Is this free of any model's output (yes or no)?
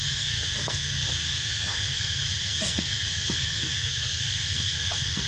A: no